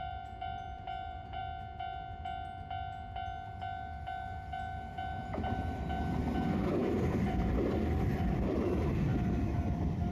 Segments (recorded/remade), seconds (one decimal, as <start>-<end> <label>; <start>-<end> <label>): 0.0-1.4 remade; 1.4-6.0 recorded; 6.0-10.1 remade